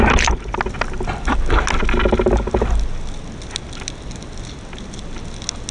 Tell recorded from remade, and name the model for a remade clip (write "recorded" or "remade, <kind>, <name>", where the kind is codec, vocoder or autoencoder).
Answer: recorded